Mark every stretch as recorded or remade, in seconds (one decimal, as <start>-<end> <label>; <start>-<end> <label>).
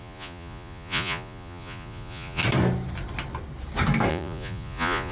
0.0-2.4 remade; 2.4-4.1 recorded; 4.1-5.1 remade